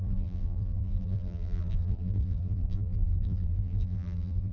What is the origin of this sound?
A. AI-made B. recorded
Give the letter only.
A